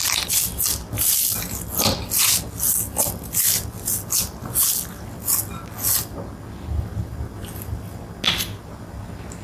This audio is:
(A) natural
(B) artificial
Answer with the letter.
A